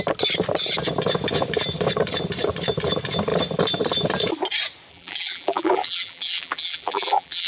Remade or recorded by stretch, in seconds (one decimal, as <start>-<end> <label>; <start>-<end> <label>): 0.0-4.9 recorded; 4.9-7.5 remade